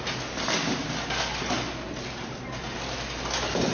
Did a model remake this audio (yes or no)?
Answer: no